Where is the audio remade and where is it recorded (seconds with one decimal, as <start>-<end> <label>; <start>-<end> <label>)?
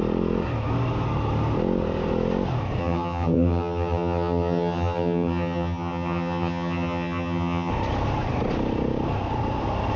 0.0-2.8 recorded; 2.8-7.7 remade; 7.7-10.0 recorded